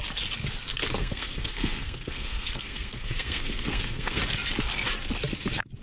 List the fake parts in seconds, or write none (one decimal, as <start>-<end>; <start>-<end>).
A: 0.7-4.2